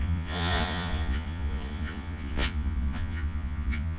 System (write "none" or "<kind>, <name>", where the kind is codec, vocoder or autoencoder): vocoder, Vocos